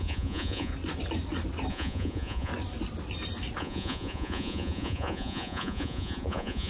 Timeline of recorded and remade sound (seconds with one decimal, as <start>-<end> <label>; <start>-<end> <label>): 0.0-0.7 remade; 0.7-1.7 recorded; 1.7-2.5 remade; 2.5-3.6 recorded; 3.6-6.7 remade